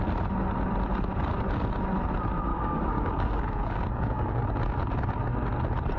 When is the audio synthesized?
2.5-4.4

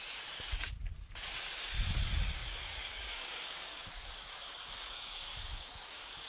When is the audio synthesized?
2.4-6.3